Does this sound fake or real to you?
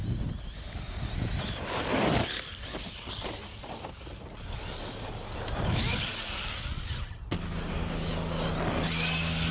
real